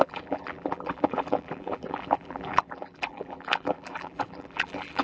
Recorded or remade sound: remade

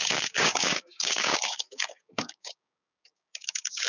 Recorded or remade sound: remade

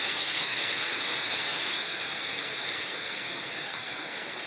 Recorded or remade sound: remade